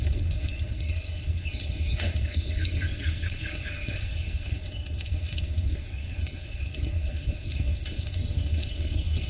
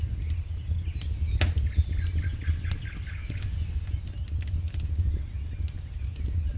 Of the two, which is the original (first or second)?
second